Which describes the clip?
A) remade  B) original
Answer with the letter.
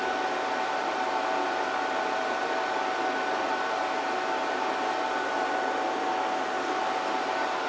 B